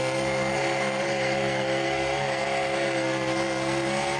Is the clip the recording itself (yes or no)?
no